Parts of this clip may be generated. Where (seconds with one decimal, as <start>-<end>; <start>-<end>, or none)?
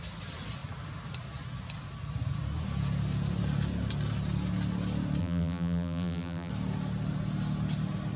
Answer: 5.2-6.5